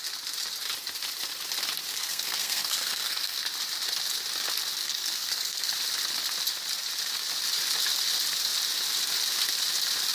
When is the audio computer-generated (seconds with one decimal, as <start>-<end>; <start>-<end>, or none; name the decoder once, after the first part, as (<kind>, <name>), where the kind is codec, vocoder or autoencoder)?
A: 1.9-3.4 (codec, SNAC); 4.8-5.7